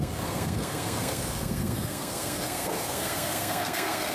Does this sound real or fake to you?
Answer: fake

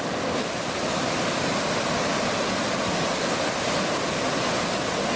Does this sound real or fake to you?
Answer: real